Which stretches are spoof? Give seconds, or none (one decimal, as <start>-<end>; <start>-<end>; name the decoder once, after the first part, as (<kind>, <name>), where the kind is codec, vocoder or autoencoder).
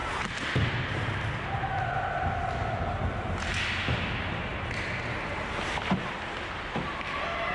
none